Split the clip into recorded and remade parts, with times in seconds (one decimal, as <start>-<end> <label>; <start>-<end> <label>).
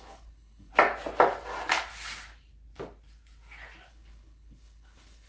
0.0-0.7 remade; 0.7-3.9 recorded; 3.9-5.3 remade